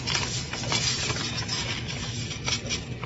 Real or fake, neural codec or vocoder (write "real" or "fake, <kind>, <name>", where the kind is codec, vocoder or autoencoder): real